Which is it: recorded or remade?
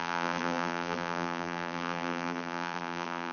remade